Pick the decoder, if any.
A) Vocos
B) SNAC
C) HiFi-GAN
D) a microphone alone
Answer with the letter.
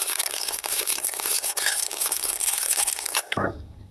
B